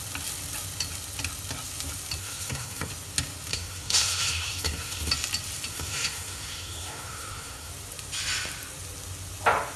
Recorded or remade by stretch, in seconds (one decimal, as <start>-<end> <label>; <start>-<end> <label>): 0.0-2.2 recorded; 2.2-2.9 remade; 2.9-3.5 recorded; 3.5-5.1 remade; 5.1-5.7 recorded; 5.7-7.7 remade; 7.7-9.8 recorded

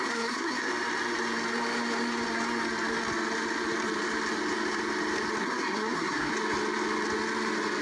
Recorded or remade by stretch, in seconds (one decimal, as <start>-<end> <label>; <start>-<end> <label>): 0.0-0.7 remade; 0.7-5.4 recorded; 5.4-6.3 remade; 6.3-7.8 recorded

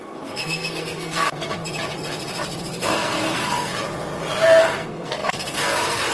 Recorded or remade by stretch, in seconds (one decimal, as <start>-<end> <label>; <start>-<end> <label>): 0.0-1.6 remade; 1.6-2.6 recorded; 2.6-3.7 remade; 3.7-4.6 recorded; 4.6-6.1 remade